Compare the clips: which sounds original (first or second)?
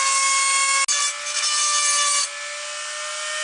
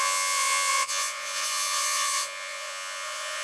first